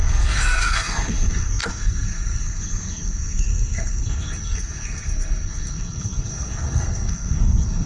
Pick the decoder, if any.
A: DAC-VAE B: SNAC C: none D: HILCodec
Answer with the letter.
B